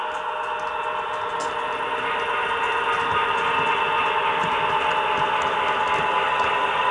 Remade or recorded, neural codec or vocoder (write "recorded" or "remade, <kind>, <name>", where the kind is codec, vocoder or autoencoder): recorded